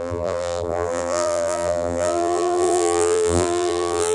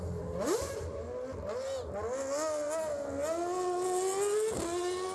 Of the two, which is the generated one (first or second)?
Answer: first